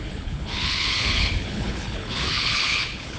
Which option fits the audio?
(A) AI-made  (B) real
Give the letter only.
A